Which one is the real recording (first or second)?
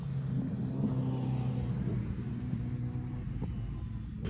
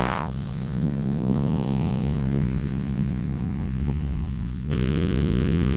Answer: first